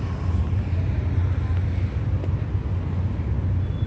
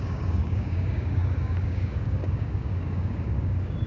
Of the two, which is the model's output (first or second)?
second